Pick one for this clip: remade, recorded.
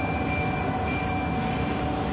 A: recorded